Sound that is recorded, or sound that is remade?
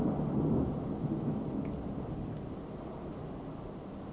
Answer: recorded